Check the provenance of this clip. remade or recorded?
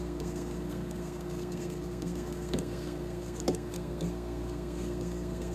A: remade